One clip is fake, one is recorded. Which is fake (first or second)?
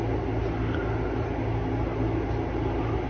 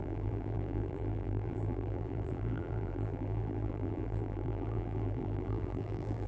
second